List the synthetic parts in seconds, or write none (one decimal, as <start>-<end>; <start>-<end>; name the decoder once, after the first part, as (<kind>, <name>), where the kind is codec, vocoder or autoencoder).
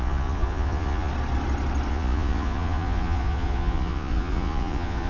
0.0-1.1 (vocoder, Vocos); 1.9-5.1